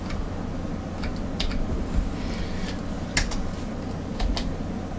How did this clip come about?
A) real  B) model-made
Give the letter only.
A